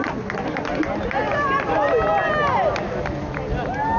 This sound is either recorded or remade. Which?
recorded